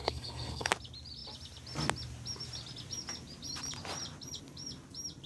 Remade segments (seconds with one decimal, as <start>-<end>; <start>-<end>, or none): 0.0-0.7